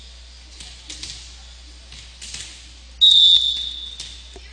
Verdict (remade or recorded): recorded